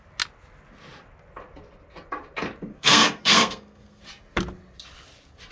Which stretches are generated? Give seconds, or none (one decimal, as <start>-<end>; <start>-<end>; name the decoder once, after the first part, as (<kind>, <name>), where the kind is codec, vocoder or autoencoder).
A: 2.7-4.0 (codec, SNAC)